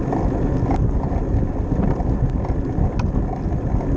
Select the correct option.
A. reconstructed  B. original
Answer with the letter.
B